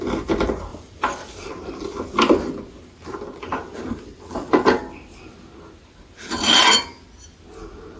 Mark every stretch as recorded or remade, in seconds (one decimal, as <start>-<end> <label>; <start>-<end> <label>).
0.0-0.7 recorded; 0.7-2.8 remade; 2.8-8.0 recorded